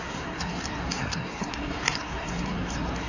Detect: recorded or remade remade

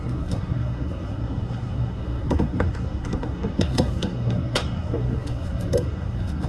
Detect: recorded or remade remade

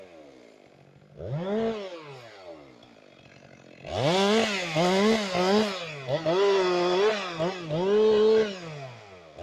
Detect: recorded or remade recorded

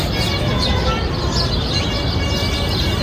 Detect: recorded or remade recorded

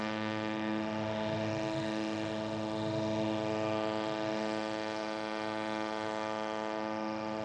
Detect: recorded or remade remade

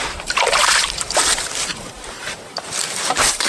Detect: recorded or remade remade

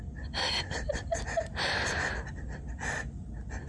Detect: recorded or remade recorded